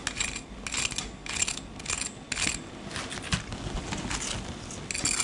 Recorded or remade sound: recorded